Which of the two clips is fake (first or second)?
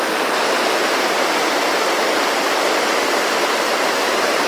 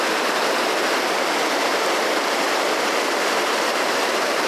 second